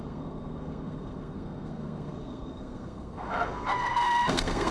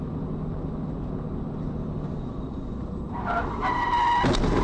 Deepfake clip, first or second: first